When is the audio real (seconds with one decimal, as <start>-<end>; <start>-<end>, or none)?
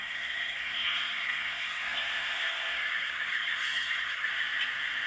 4.3-5.1